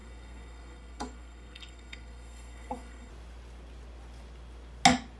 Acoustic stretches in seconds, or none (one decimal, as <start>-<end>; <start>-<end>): 3.1-5.2